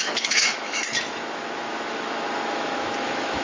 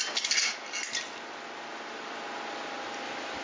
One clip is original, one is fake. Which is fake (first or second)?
first